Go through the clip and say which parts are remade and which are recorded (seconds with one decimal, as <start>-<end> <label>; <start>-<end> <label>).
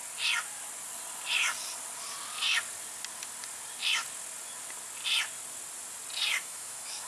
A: 0.0-6.3 recorded; 6.3-7.1 remade